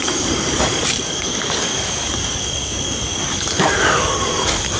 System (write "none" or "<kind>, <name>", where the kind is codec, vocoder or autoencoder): codec, DAC